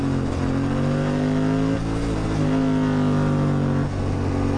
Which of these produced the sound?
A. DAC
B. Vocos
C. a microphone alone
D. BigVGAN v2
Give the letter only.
C